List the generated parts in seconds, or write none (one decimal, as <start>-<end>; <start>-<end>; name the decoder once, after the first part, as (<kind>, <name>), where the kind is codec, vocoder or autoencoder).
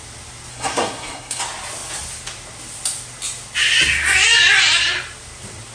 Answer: 0.5-1.4 (codec, SNAC)